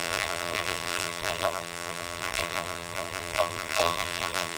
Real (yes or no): no